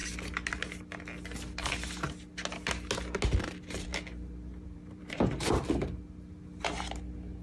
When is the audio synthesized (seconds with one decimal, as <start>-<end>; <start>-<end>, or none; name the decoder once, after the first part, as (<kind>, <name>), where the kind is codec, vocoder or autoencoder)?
4.5-5.4 (vocoder, BigVGAN v2)